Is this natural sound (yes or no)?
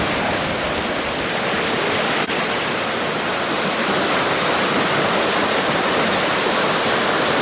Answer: yes